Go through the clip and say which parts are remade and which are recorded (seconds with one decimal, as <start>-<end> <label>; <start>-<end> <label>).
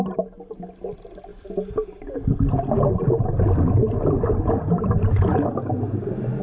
0.0-6.4 recorded